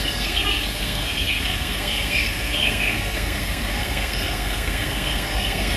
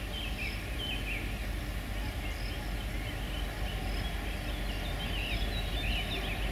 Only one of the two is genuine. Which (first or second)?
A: second